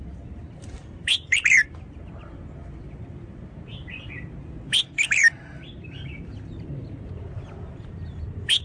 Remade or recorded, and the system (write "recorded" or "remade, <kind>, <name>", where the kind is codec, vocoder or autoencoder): remade, vocoder, BigVGAN v2